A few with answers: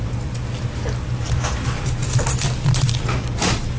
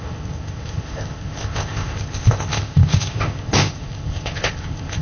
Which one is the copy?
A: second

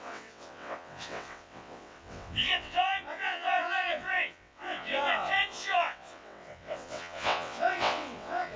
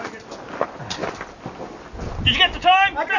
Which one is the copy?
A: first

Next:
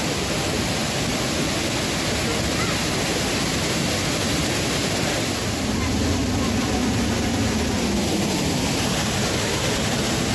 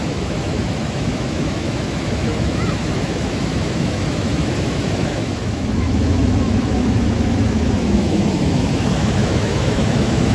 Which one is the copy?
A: second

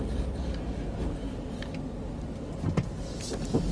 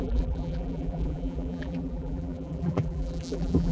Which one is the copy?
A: second